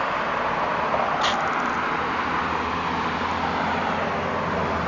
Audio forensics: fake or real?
real